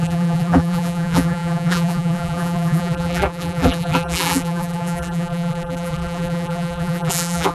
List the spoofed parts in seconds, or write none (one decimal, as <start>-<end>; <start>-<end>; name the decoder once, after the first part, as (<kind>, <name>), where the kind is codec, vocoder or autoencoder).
0.0-7.5 (vocoder, BigVGAN v2)